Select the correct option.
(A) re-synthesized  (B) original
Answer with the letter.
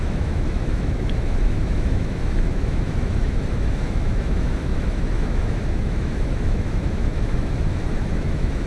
A